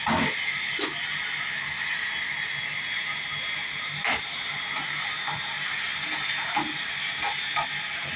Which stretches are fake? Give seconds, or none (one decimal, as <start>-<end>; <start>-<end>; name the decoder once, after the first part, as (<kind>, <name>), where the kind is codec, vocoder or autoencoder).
none